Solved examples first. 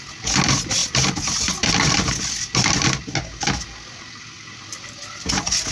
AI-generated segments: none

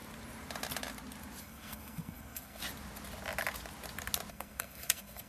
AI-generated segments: 1.4-2.6 (codec, SNAC); 4.3-5.3

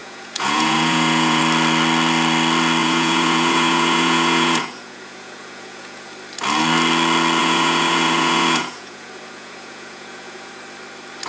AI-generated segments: 0.0-1.4 (vocoder, Vocos); 2.8-6.1; 7.4-10.5